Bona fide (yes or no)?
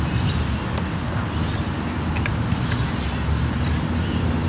yes